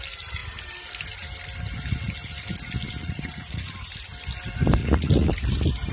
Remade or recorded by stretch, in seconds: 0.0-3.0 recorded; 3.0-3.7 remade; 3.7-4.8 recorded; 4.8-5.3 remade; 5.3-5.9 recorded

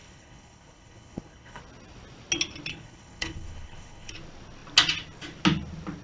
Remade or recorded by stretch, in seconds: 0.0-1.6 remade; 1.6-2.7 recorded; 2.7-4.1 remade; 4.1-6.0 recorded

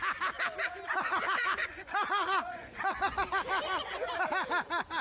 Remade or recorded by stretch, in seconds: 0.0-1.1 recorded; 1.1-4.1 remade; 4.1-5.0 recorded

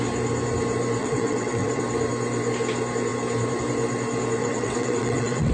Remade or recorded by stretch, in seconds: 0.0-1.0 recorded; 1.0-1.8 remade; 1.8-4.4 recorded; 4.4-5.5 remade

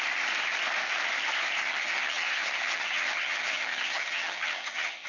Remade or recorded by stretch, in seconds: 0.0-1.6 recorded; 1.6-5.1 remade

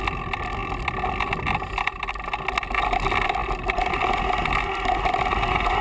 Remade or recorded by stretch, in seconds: 0.0-0.6 recorded; 0.6-2.1 remade; 2.1-3.4 recorded; 3.4-4.2 remade; 4.2-5.8 recorded